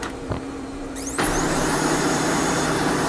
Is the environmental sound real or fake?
fake